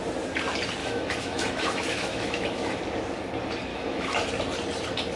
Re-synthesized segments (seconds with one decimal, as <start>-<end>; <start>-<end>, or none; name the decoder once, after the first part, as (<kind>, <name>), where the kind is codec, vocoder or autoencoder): 0.8-2.8 (autoencoder, DAC-VAE); 3.7-4.3

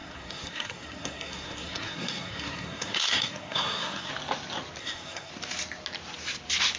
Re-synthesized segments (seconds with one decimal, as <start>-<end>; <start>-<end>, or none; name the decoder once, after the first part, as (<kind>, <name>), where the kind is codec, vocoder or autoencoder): 0.0-4.1 (codec, SNAC); 4.8-5.3

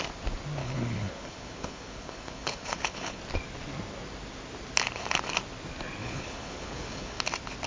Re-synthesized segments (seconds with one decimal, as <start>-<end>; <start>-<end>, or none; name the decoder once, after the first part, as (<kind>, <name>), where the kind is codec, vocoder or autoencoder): 0.6-3.2 (codec, HILCodec); 6.0-7.2

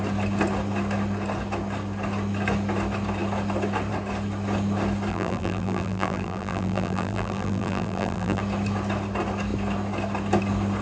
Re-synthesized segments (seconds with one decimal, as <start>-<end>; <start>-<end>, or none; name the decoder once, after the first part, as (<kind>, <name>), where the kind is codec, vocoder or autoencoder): 5.1-8.4 (vocoder, BigVGAN v2)

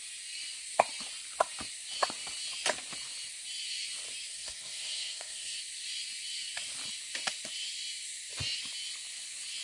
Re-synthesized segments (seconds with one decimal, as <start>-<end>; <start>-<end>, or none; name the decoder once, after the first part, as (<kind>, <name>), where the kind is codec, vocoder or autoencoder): 4.3-5.6 (codec, SNAC)

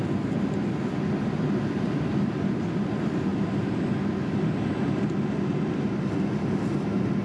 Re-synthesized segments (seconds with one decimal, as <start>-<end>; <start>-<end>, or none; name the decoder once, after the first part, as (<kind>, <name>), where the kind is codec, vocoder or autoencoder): none

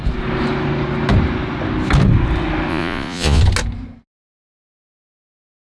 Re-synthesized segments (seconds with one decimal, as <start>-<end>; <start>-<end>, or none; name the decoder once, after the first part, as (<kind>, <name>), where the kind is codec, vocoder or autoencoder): 2.7-3.4 (vocoder, Vocos)